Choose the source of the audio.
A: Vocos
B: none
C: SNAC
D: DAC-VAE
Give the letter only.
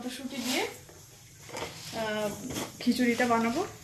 B